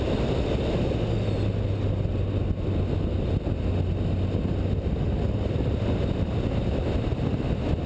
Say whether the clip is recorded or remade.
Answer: recorded